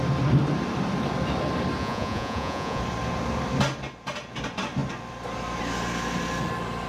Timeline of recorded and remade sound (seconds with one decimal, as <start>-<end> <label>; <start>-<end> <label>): 0.0-1.8 recorded; 1.8-2.8 remade; 2.8-6.9 recorded